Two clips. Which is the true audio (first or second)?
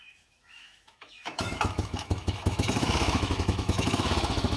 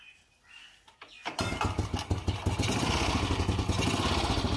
second